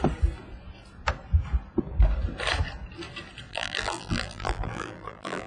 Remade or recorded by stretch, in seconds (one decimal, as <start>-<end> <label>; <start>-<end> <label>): 0.0-3.5 recorded; 3.5-5.5 remade